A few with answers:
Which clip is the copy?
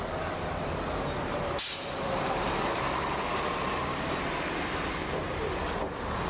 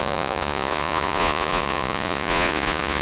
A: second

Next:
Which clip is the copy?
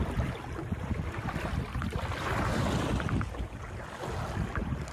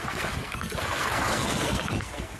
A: second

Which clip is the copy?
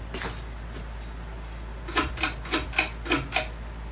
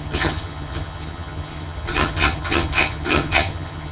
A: second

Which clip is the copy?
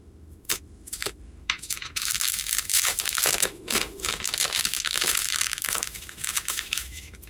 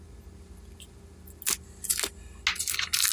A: first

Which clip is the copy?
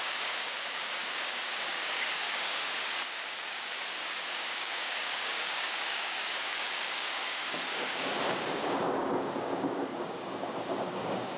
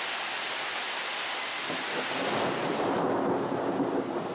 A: first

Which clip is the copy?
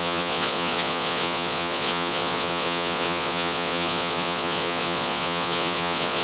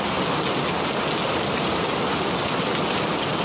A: first